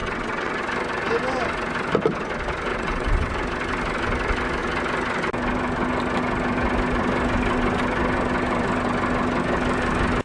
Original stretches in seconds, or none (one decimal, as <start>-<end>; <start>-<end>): 0.6-2.7; 3.4-10.2